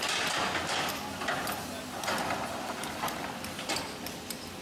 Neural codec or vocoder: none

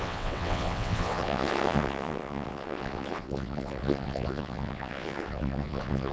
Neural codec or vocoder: vocoder, WaveNeXt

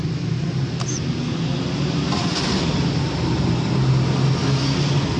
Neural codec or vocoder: none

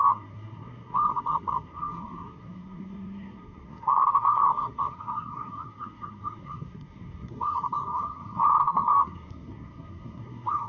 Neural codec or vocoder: codec, SNAC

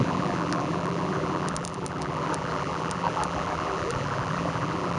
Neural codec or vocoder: vocoder, BigVGAN v2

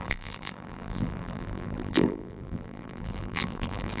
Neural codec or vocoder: vocoder, BigVGAN v2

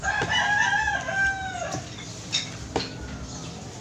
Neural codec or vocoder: none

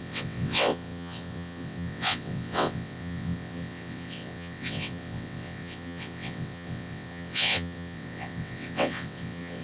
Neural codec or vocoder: vocoder, WaveNeXt